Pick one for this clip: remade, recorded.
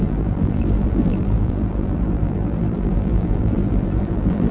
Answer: remade